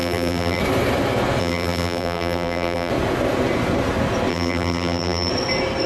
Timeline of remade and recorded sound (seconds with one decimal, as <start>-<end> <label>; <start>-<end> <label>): 0.0-0.6 remade; 0.6-1.4 recorded; 1.4-2.9 remade; 2.9-4.3 recorded; 4.3-5.3 remade; 5.3-5.9 recorded